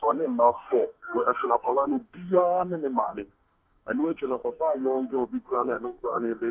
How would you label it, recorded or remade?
remade